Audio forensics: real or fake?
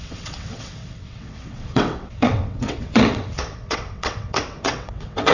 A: fake